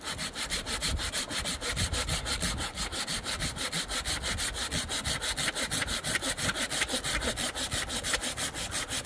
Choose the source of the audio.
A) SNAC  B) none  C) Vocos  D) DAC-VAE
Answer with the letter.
B